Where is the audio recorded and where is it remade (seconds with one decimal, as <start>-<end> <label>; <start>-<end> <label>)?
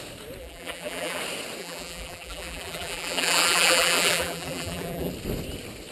0.0-0.4 recorded; 0.4-1.2 remade; 1.2-1.6 recorded; 1.6-5.1 remade; 5.1-5.9 recorded